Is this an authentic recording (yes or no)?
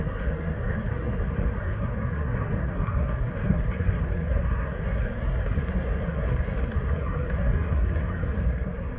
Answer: no